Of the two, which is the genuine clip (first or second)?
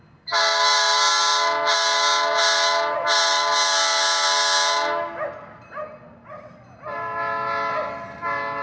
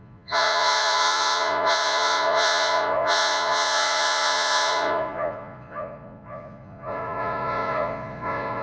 first